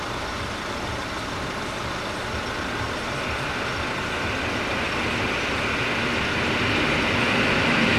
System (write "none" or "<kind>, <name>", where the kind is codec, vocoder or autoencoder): none